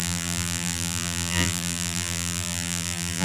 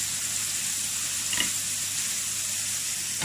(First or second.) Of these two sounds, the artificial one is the first